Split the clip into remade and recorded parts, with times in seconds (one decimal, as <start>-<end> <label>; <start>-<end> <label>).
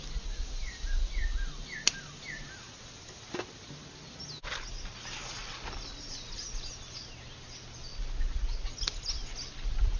0.0-10.0 recorded